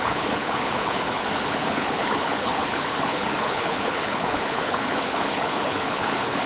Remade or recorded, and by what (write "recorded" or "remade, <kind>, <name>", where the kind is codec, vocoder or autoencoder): remade, codec, HILCodec